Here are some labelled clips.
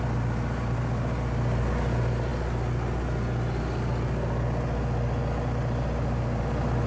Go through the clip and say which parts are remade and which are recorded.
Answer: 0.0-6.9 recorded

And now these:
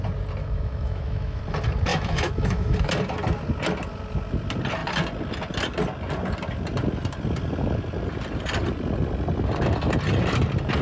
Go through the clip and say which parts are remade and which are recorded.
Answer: 0.0-0.4 recorded; 0.4-1.4 remade; 1.4-1.9 recorded; 1.9-2.9 remade; 2.9-10.8 recorded